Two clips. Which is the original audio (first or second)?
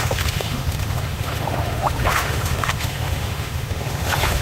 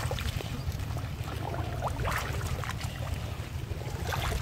second